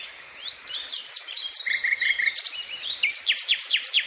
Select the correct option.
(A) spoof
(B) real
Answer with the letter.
A